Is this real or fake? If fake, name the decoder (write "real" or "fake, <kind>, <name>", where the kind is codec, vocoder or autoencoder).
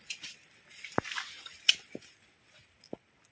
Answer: real